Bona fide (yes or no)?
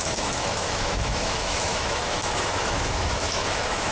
no